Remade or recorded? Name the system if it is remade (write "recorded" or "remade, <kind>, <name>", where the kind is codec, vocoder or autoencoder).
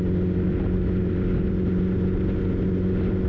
recorded